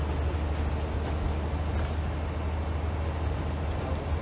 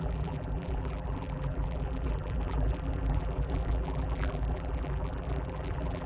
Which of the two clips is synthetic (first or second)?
second